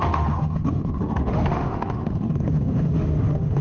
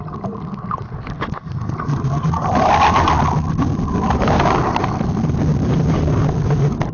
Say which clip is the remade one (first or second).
first